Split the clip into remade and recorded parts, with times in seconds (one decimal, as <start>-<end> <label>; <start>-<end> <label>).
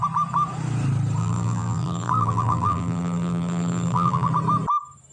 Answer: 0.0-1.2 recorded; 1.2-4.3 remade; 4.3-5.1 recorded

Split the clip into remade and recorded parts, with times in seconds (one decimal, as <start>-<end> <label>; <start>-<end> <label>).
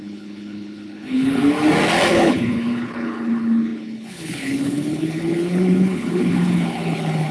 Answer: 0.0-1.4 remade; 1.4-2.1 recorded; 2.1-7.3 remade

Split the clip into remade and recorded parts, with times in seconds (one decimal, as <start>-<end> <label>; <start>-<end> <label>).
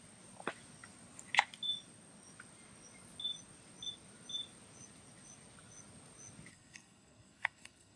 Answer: 0.0-6.5 recorded; 6.5-8.0 remade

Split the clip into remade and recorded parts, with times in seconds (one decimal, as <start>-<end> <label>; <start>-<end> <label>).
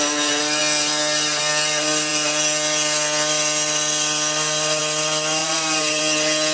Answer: 0.0-5.4 recorded; 5.4-6.0 remade; 6.0-6.5 recorded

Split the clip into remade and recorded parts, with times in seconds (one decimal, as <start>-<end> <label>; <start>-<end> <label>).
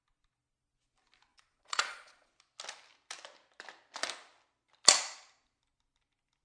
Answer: 0.0-1.3 recorded; 1.3-2.3 remade; 2.3-6.4 recorded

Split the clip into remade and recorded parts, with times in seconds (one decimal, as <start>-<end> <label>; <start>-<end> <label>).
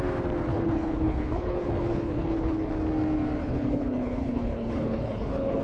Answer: 0.0-0.5 recorded; 0.5-2.7 remade; 2.7-3.4 recorded; 3.4-5.6 remade